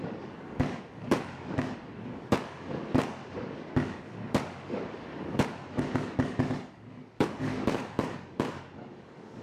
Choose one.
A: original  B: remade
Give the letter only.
B